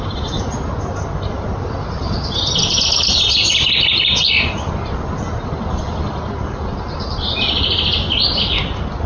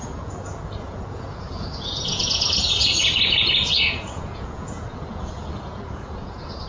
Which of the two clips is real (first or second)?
first